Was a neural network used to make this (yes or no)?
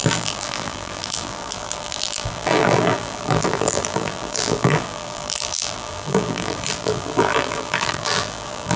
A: yes